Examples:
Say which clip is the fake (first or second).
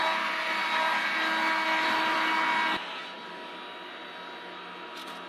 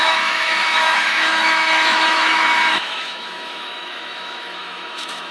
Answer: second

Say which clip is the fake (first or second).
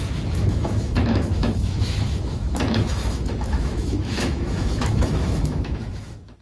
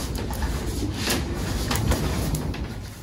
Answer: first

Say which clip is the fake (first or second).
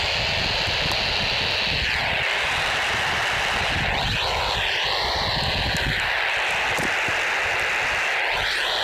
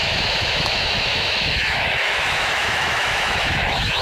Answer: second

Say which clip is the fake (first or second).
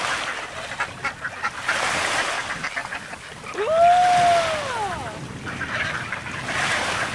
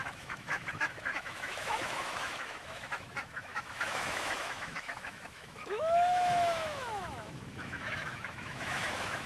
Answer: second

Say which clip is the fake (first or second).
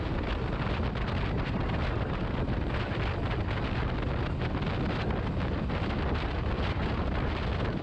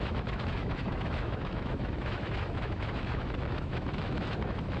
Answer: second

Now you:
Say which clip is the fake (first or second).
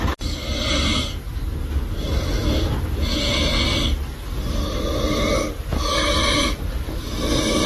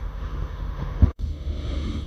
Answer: second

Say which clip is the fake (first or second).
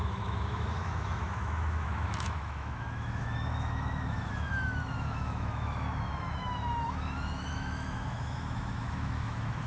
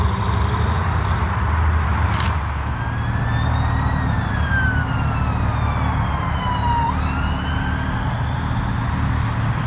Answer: first